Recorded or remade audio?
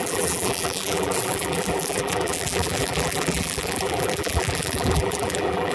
remade